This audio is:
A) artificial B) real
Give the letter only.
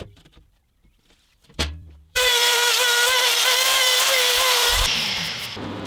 A